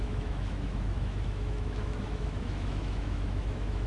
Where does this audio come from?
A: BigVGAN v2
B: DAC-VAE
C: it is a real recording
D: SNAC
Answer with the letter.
B